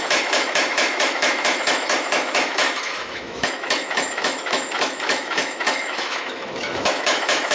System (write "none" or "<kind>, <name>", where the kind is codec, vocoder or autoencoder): autoencoder, DAC-VAE